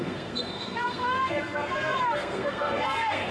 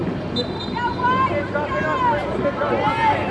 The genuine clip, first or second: second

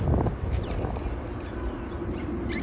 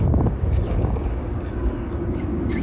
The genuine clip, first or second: first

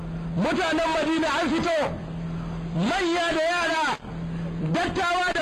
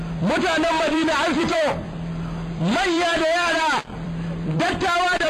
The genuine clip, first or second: first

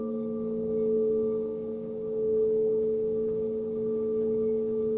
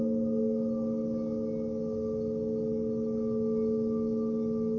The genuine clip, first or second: second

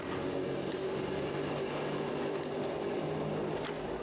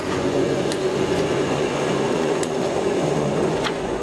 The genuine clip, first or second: first